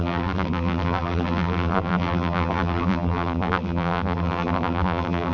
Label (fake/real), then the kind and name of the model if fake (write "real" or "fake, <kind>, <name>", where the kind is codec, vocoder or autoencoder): fake, vocoder, BigVGAN v2